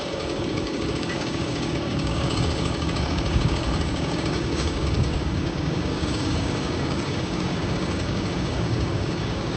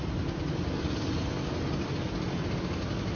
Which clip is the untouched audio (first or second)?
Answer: second